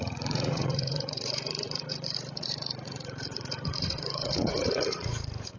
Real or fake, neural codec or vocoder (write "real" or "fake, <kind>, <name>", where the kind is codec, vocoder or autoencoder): fake, vocoder, Vocos